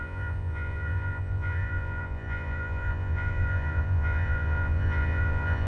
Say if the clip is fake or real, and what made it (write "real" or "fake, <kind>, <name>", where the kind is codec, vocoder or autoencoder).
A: fake, vocoder, Vocos